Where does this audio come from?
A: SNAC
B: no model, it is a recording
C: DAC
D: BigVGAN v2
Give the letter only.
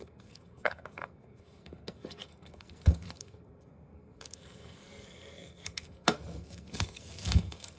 A